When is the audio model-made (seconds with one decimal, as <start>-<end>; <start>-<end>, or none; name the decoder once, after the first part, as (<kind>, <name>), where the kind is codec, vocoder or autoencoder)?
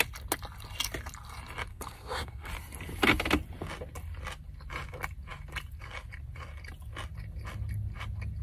1.7-2.5 (codec, SNAC)